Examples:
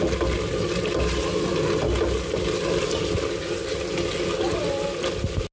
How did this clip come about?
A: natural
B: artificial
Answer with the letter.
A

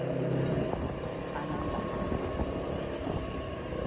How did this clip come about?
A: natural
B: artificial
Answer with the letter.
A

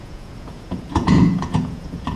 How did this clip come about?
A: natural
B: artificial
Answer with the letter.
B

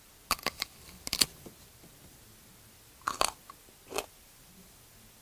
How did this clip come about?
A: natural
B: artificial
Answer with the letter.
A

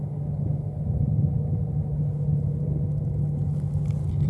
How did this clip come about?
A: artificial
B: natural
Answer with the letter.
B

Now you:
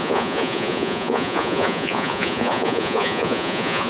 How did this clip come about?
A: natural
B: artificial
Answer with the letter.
B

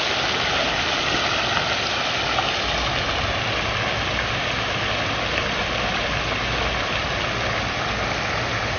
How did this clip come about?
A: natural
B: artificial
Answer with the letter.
A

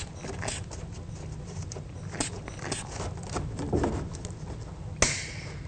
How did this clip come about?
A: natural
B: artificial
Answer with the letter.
A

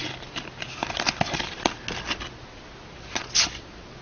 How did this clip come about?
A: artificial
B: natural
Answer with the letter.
B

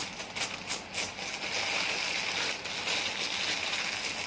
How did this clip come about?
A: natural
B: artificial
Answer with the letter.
A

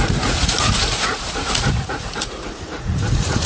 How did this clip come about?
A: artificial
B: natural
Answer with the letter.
A